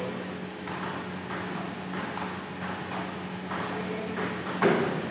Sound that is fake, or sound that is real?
real